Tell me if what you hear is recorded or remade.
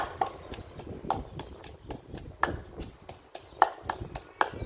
recorded